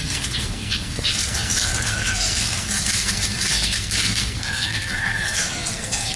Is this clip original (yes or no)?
no